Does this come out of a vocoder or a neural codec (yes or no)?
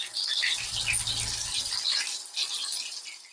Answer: no